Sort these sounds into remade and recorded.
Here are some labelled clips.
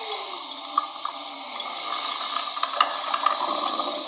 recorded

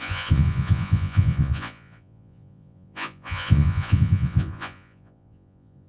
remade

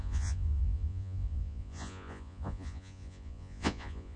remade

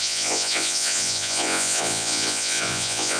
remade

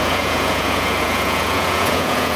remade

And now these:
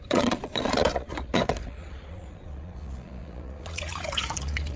remade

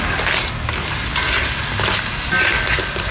recorded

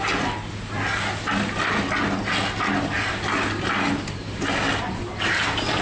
recorded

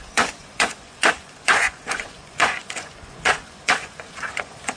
remade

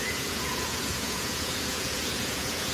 remade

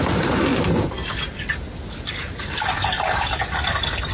recorded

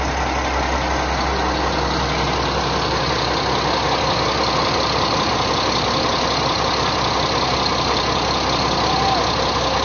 recorded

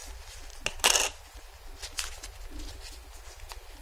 recorded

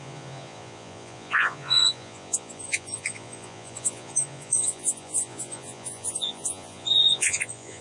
remade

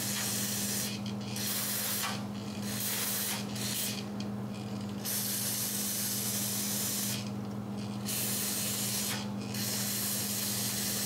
recorded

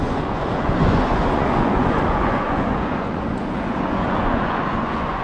remade